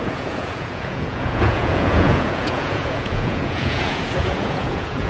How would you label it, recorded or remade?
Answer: remade